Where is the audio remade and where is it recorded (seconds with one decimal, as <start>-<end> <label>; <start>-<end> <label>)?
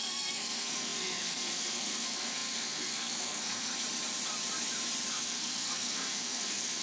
0.0-3.7 remade; 3.7-5.1 recorded; 5.1-6.8 remade